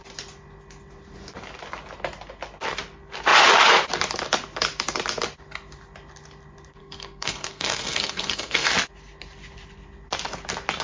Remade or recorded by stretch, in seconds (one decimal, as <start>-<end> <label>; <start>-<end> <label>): 0.0-6.8 recorded; 6.8-8.7 remade; 8.7-10.8 recorded